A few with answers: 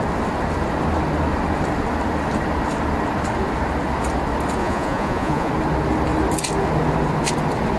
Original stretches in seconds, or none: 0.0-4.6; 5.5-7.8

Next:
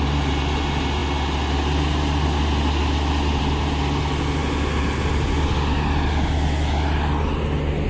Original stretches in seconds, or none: 0.0-7.9

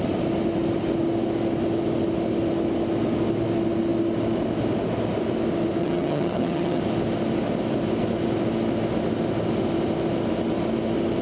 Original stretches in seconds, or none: 0.0-5.8; 6.8-11.2